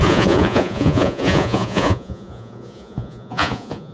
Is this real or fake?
fake